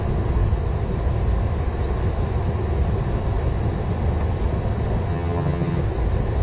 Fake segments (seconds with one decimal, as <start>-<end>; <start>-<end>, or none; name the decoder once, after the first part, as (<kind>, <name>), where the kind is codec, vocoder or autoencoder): 5.1-5.8 (vocoder, HiFi-GAN)